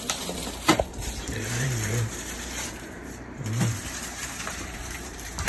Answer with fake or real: fake